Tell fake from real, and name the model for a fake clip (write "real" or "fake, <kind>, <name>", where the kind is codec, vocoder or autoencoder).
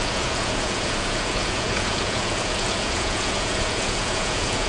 fake, vocoder, Vocos